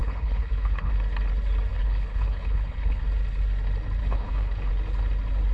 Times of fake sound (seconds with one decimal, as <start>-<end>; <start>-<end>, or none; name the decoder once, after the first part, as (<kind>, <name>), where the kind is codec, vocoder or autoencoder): 0.0-0.9 (codec, HILCodec); 1.7-3.0; 4.0-4.7